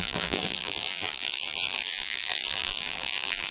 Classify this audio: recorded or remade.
remade